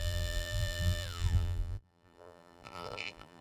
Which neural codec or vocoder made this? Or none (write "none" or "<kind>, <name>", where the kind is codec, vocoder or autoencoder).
vocoder, BigVGAN v2